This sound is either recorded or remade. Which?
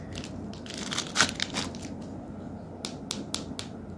recorded